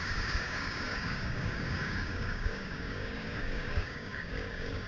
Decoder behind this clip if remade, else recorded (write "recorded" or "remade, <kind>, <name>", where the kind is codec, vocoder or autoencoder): remade, codec, DAC